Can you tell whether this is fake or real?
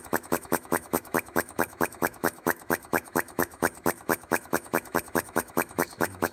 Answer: fake